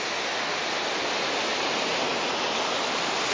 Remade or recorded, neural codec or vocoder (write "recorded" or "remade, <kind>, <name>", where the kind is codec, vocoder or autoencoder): recorded